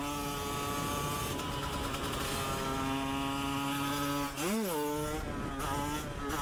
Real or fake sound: real